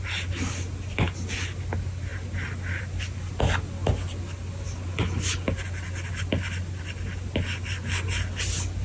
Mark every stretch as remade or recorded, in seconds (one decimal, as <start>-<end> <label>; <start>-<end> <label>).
0.0-8.8 recorded